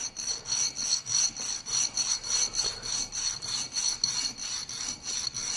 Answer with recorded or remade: recorded